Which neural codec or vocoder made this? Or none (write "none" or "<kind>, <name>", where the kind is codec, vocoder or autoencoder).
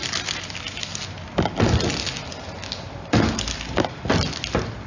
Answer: none